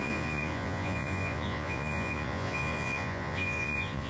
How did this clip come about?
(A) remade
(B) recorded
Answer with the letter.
A